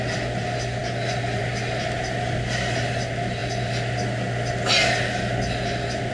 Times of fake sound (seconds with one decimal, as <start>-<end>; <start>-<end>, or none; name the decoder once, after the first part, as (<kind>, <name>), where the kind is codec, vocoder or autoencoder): none